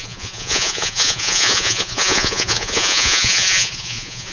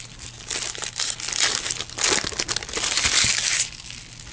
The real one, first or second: second